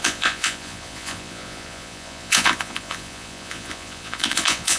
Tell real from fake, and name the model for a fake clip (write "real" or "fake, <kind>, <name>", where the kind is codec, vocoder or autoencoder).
fake, vocoder, Vocos